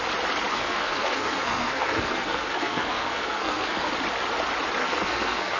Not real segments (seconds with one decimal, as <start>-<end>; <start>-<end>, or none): 0.5-3.9; 4.8-5.6